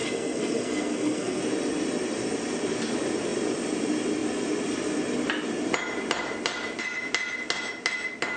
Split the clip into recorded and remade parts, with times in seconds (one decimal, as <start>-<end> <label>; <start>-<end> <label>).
0.0-1.4 remade; 1.4-8.4 recorded